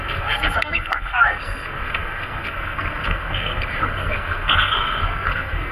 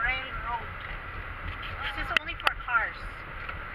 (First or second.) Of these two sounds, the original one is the second